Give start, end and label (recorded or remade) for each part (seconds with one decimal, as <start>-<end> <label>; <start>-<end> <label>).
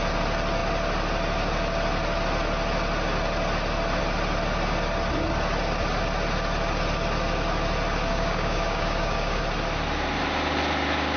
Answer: 0.0-8.1 recorded; 8.1-9.4 remade; 9.4-11.2 recorded